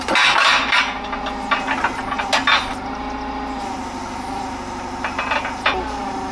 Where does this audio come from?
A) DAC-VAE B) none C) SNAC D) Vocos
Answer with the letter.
B